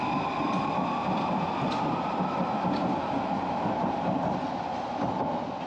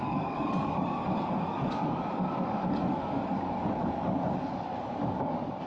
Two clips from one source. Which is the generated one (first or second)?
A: second